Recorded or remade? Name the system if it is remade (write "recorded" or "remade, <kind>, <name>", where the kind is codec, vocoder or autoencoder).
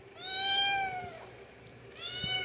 recorded